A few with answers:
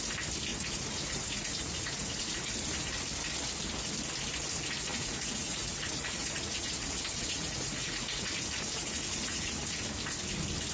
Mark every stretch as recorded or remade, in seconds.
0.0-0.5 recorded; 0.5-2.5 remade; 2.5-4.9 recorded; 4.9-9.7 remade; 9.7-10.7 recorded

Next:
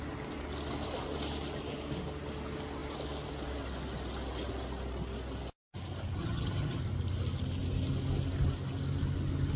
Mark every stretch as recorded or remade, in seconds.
0.0-6.2 recorded; 6.2-6.8 remade; 6.8-9.6 recorded

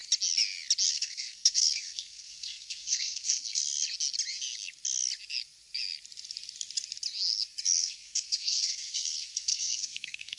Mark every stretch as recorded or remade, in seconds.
0.0-0.9 recorded; 0.9-3.6 remade; 3.6-7.8 recorded; 7.8-10.4 remade

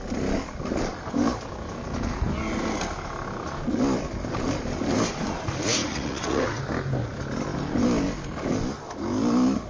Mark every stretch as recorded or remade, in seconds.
0.0-5.8 recorded; 5.8-6.6 remade; 6.6-9.7 recorded

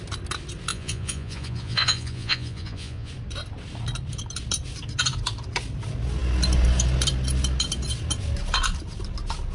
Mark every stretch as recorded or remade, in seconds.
0.0-0.7 recorded; 0.7-3.1 remade; 3.1-9.5 recorded